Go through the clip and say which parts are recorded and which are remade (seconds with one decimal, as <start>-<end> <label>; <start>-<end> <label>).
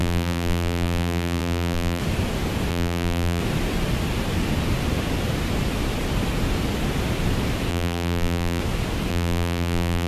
0.0-2.0 remade; 2.0-2.7 recorded; 2.7-3.4 remade; 3.4-7.7 recorded; 7.7-8.6 remade; 8.6-9.1 recorded; 9.1-10.1 remade